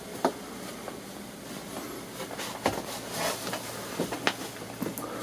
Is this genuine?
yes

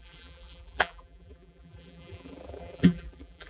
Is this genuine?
no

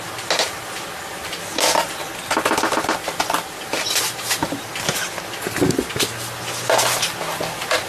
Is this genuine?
yes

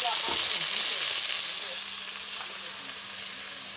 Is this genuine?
yes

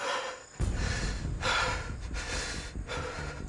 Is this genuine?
yes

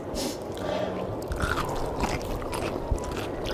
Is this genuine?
yes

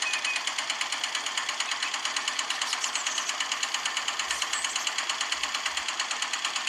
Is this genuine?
yes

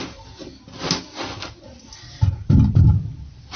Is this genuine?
yes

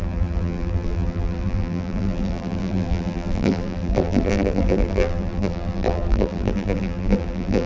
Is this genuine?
no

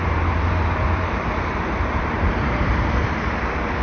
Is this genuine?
no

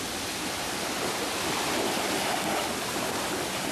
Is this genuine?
yes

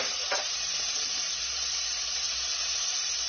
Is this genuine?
no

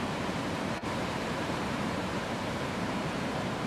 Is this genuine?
no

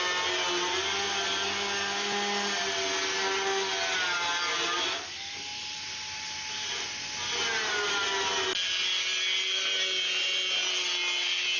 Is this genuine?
yes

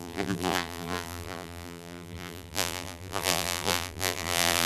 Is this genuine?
no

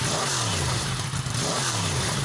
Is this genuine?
no